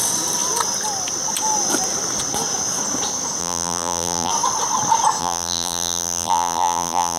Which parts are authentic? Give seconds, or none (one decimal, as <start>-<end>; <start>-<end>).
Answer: 0.0-3.4; 4.3-5.2